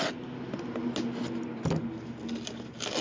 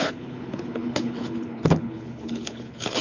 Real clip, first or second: first